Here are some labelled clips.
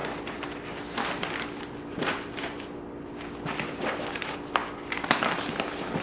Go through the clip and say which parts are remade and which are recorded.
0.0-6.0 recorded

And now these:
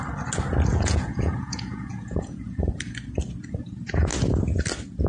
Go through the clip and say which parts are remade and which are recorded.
0.0-0.7 recorded; 0.7-2.7 remade; 2.7-5.1 recorded

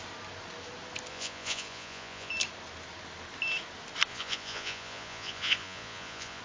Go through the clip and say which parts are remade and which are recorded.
0.0-1.1 recorded; 1.1-2.3 remade; 2.3-4.1 recorded; 4.1-6.4 remade

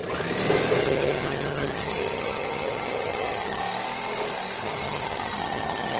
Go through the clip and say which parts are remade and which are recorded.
0.0-0.8 recorded; 0.8-3.6 remade; 3.6-4.6 recorded; 4.6-6.0 remade

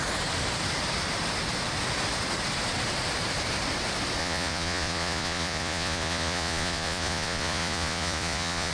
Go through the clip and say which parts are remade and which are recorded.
0.0-4.2 recorded; 4.2-8.7 remade

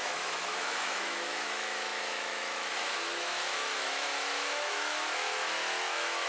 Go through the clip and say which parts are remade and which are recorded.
0.0-6.3 remade

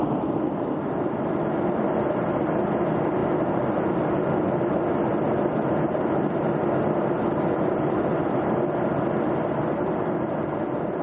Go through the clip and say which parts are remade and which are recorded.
0.0-11.0 recorded

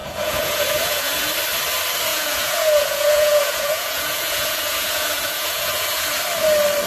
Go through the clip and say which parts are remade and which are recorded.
0.0-1.3 remade; 1.3-2.1 recorded; 2.1-6.2 remade; 6.2-6.9 recorded